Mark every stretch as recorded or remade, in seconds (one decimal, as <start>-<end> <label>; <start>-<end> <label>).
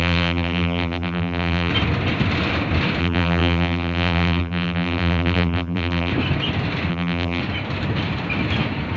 0.0-1.7 remade; 1.7-3.0 recorded; 3.0-6.1 remade; 6.1-6.9 recorded; 6.9-7.4 remade; 7.4-9.0 recorded